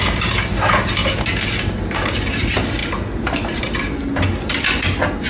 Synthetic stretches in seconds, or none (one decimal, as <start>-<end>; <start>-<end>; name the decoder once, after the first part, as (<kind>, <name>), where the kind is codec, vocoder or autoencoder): none